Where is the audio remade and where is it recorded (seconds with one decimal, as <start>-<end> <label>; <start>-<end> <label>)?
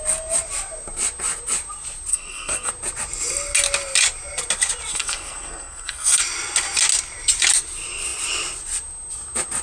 0.0-2.1 recorded; 2.1-2.7 remade; 2.7-4.9 recorded; 4.9-6.2 remade; 6.2-9.6 recorded